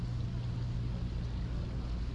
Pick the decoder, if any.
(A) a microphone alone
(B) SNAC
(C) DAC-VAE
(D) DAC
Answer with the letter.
A